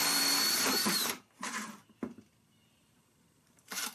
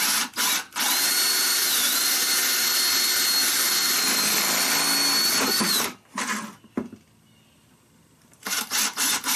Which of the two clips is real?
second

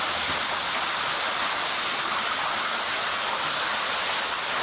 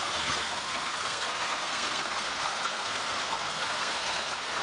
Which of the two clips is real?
first